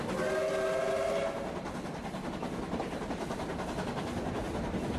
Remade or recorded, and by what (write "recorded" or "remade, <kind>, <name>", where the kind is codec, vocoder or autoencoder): recorded